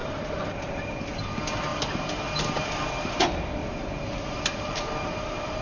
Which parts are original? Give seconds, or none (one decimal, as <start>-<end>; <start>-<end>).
1.0-1.7; 3.1-3.6